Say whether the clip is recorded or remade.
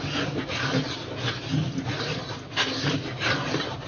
recorded